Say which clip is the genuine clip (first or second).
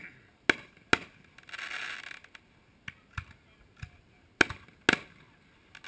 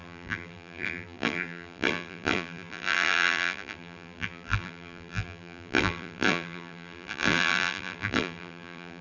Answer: first